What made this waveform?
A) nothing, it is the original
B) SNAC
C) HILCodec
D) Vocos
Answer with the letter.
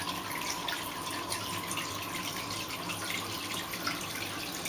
A